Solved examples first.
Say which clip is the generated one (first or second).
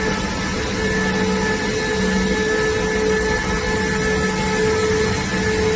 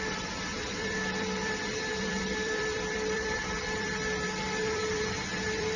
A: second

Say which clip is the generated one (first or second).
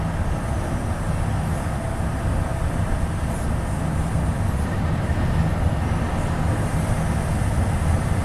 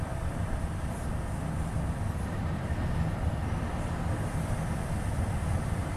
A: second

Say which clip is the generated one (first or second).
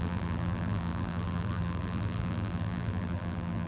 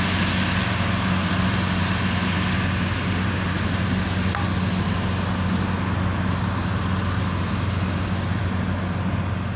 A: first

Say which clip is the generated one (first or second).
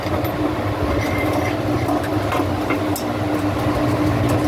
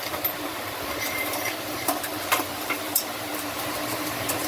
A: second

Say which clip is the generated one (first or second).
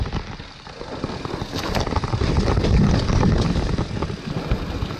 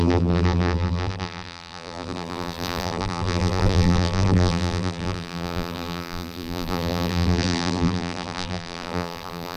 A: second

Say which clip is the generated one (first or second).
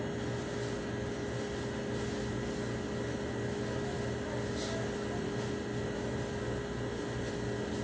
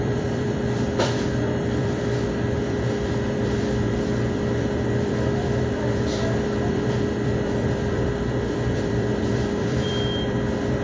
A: second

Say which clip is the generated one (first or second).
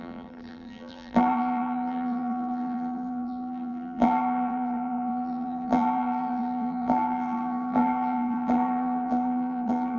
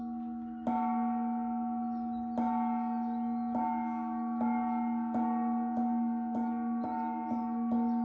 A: first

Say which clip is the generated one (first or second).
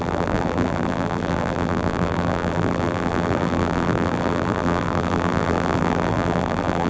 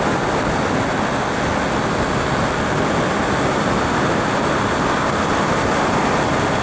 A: first